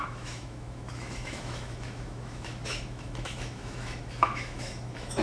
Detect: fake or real fake